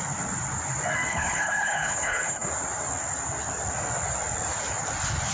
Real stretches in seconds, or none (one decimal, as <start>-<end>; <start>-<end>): 0.0-1.1; 2.5-5.3